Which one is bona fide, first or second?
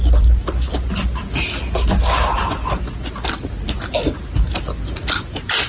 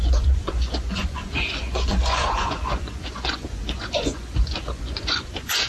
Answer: first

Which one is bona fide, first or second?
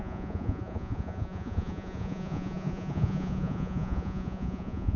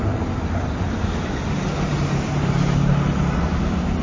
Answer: second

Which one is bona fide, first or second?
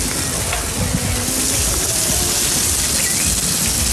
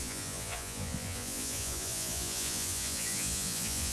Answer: first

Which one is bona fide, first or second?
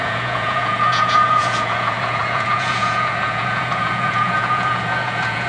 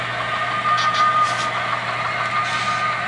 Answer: second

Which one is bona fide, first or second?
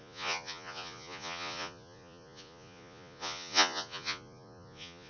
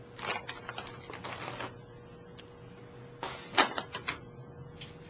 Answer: second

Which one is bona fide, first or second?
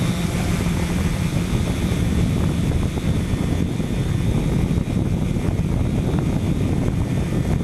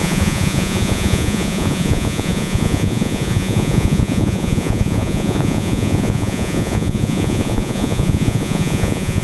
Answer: first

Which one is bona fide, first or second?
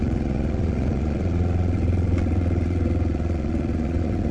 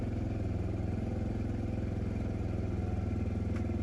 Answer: second